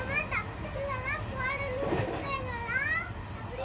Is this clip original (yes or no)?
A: yes